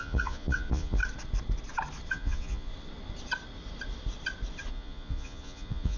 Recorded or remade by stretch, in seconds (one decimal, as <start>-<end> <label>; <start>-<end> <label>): 0.0-1.0 remade; 1.0-2.1 recorded; 2.1-2.7 remade; 2.7-4.7 recorded; 4.7-6.0 remade